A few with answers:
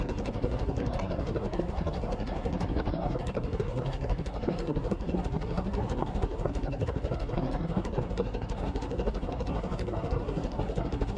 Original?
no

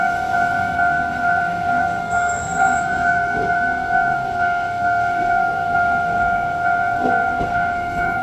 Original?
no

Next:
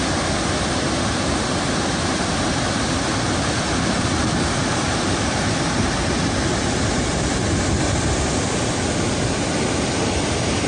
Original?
yes